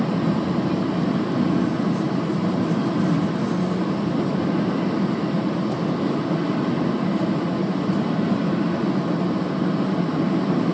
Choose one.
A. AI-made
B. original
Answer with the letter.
B